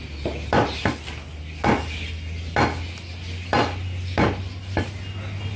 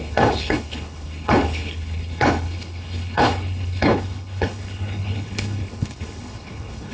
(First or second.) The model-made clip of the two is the second